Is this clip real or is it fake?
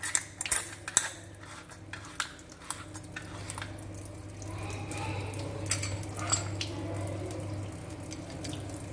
real